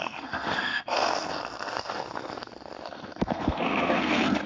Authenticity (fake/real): fake